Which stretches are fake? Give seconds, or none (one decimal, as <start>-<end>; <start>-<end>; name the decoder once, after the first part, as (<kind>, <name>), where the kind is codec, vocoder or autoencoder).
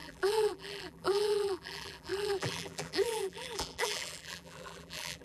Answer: 0.0-5.2 (vocoder, BigVGAN v2)